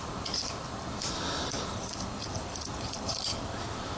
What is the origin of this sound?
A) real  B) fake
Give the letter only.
B